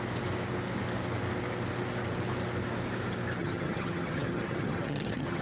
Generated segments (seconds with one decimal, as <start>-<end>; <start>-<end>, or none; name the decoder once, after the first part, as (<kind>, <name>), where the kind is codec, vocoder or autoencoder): 3.4-5.4 (vocoder, HiFi-GAN)